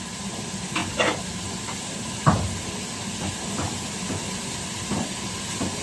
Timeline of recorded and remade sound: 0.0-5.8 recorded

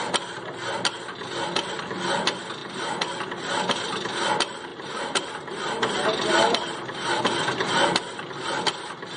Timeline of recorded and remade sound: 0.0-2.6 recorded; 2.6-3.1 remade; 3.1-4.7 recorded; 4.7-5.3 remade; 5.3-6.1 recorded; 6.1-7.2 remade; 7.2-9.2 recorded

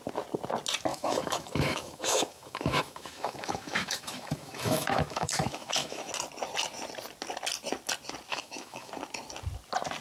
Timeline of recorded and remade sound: 0.0-0.9 recorded; 0.9-6.1 remade; 6.1-8.3 recorded; 8.3-8.9 remade; 8.9-10.0 recorded

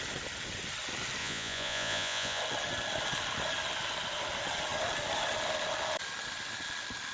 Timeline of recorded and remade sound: 0.0-1.2 recorded; 1.2-2.4 remade; 2.4-7.1 recorded